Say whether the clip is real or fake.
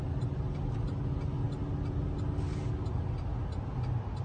real